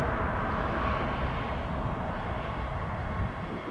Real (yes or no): yes